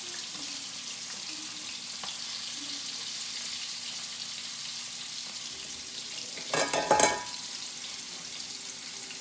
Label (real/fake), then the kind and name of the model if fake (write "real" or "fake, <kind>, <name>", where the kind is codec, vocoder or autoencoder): real